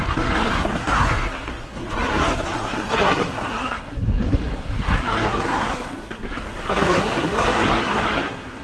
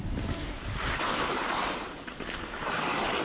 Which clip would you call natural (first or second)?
second